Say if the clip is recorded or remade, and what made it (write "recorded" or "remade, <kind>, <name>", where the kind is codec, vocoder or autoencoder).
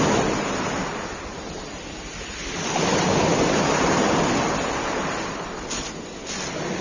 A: recorded